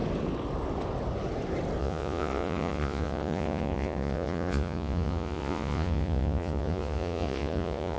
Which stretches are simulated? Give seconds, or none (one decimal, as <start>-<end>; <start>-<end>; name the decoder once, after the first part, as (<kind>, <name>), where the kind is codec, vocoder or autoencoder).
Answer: 1.8-8.0 (vocoder, Vocos)